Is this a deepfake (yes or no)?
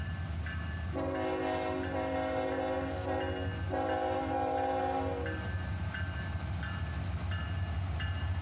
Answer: no